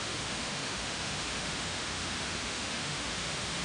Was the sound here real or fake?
fake